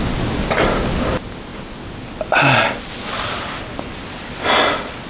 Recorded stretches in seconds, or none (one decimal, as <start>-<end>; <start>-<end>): 0.0-3.0; 4.0-5.1